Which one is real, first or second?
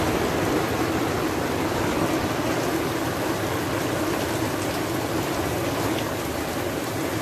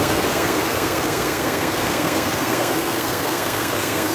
first